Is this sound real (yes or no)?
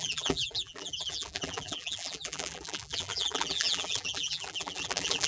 no